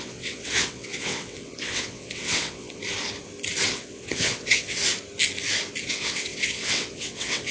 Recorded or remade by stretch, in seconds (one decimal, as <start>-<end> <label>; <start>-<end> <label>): 0.0-2.8 remade; 2.8-3.7 recorded; 3.7-4.8 remade; 4.8-5.8 recorded; 5.8-7.5 remade